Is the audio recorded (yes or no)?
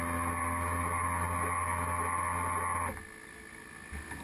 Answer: yes